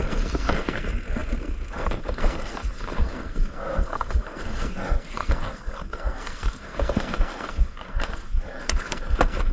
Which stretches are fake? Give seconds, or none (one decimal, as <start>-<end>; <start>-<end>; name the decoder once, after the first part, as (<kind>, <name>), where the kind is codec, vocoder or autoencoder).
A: 0.0-9.5 (codec, SNAC)